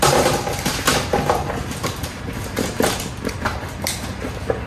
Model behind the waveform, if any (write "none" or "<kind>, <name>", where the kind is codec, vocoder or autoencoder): none